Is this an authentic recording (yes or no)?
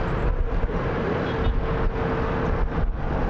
yes